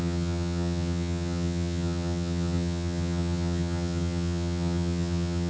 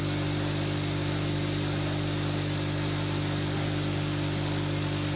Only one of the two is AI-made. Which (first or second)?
first